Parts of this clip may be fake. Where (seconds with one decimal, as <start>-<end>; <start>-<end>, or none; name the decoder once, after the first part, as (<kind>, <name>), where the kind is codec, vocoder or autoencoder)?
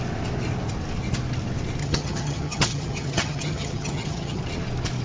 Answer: 1.8-4.4 (vocoder, HiFi-GAN)